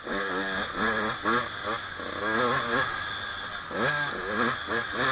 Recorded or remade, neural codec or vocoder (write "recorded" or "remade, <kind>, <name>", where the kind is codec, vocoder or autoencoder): recorded